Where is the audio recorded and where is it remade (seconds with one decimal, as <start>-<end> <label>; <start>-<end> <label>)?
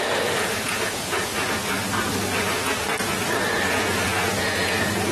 0.0-1.3 remade; 1.3-3.3 recorded; 3.3-5.1 remade